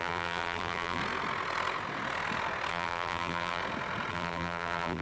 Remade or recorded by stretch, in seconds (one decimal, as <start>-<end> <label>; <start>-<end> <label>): 0.0-1.0 remade; 1.0-2.7 recorded; 2.7-3.6 remade; 3.6-4.1 recorded; 4.1-5.0 remade